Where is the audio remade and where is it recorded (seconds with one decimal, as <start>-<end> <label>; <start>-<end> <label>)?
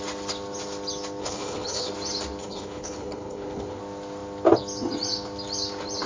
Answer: 0.0-1.2 recorded; 1.2-1.9 remade; 1.9-2.4 recorded; 2.4-3.8 remade; 3.8-6.1 recorded